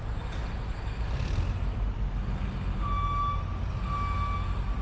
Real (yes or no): yes